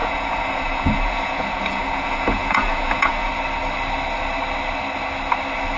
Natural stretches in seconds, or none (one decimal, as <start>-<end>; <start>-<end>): 3.3-5.8